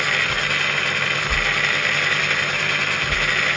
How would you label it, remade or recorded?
recorded